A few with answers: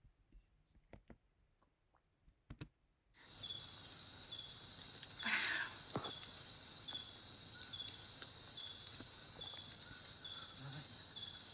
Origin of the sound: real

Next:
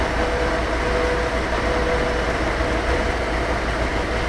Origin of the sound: real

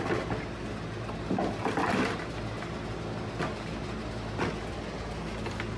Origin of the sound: real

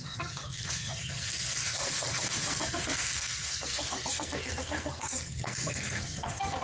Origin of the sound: fake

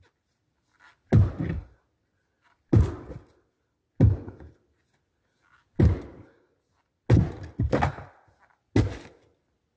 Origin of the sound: real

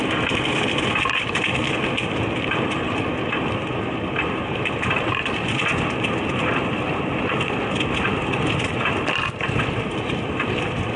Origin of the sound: real